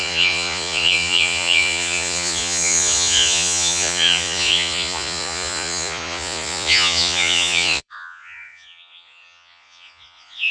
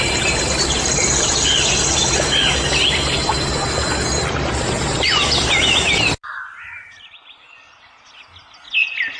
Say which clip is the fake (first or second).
first